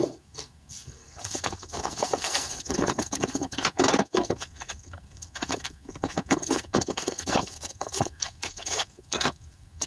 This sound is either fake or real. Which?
fake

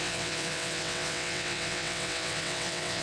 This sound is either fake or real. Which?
fake